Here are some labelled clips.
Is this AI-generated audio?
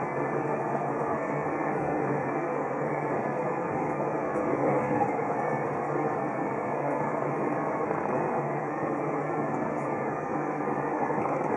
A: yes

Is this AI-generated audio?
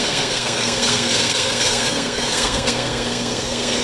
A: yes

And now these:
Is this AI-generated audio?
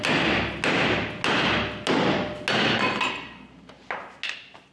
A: no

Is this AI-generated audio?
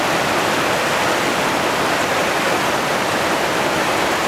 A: no